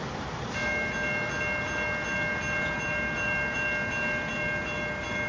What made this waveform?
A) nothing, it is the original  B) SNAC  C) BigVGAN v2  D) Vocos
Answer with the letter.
A